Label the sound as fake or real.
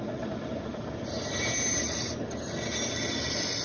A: real